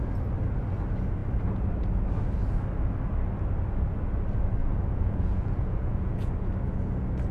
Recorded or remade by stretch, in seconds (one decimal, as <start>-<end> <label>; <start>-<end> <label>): 0.0-4.6 recorded; 4.6-6.3 remade; 6.3-7.3 recorded